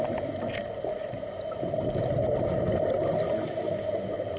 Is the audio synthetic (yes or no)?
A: no